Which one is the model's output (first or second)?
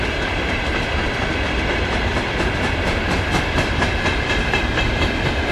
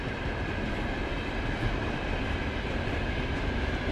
first